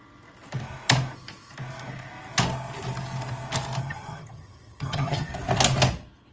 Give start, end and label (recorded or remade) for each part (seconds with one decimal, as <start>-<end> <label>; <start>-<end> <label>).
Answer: 0.0-3.8 recorded; 3.8-5.3 remade; 5.3-6.3 recorded